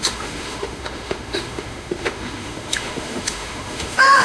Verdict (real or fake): fake